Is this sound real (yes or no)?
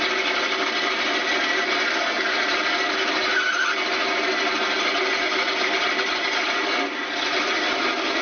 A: yes